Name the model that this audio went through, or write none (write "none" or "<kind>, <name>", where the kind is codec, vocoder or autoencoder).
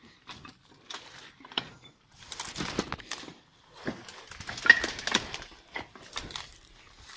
none